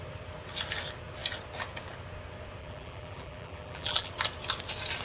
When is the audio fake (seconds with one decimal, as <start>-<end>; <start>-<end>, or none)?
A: 2.6-4.1